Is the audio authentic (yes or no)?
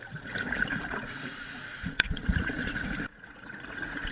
no